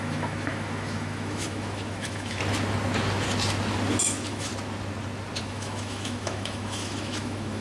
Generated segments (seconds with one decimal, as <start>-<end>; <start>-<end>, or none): 0.0-2.4; 4.0-4.5; 5.4-7.6